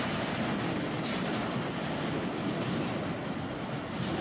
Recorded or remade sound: recorded